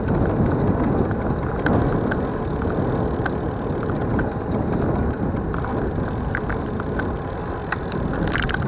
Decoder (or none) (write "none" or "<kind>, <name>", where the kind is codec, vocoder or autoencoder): none